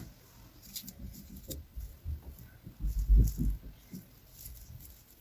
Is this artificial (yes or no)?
no